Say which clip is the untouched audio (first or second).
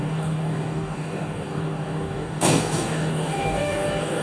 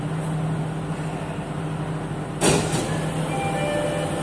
second